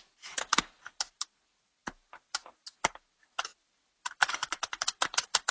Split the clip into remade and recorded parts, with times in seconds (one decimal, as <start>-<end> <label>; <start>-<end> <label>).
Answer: 0.0-4.2 recorded; 4.2-5.0 remade; 5.0-5.5 recorded